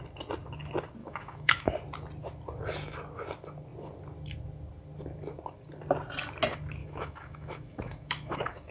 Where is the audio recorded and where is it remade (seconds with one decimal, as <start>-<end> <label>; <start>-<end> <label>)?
0.0-1.0 recorded; 1.0-1.7 remade; 1.7-6.8 recorded; 6.8-8.7 remade

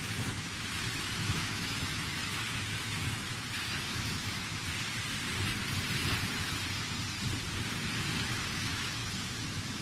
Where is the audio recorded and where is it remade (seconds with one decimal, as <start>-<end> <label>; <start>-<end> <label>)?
0.0-4.6 remade; 4.6-7.7 recorded; 7.7-9.8 remade

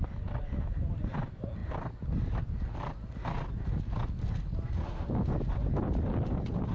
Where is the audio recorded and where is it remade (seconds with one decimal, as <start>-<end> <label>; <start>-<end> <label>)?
0.0-6.7 recorded

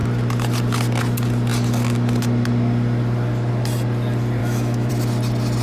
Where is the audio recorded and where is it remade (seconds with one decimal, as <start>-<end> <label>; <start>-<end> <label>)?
0.0-4.4 recorded; 4.4-4.9 remade; 4.9-5.6 recorded

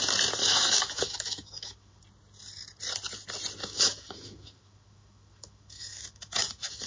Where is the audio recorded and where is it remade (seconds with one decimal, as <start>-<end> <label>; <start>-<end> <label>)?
0.0-0.4 recorded; 0.4-2.0 remade; 2.0-3.6 recorded; 3.6-6.9 remade

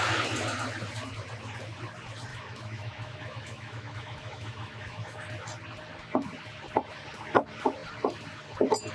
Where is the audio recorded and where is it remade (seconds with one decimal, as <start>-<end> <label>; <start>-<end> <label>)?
0.0-2.3 recorded; 2.3-5.2 remade; 5.2-8.9 recorded

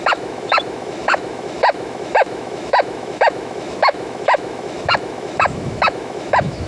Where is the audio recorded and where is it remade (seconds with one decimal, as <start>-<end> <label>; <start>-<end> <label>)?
0.0-6.7 remade